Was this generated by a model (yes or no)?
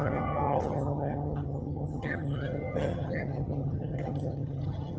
yes